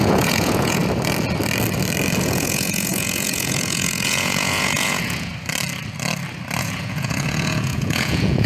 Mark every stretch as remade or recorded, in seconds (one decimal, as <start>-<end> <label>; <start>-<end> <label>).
0.0-0.8 remade; 0.8-2.2 recorded; 2.2-5.3 remade; 5.3-6.6 recorded; 6.6-8.5 remade